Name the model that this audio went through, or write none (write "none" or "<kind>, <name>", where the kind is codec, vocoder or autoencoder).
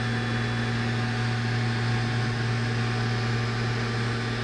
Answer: none